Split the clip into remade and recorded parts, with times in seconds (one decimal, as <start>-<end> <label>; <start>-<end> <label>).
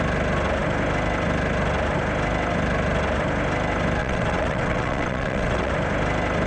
0.0-4.0 recorded; 4.0-5.7 remade; 5.7-6.5 recorded